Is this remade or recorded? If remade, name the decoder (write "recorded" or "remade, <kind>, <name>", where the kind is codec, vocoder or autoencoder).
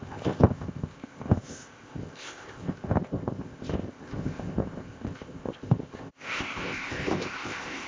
remade, codec, ZipCodec